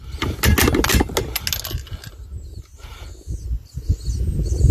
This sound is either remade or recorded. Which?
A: recorded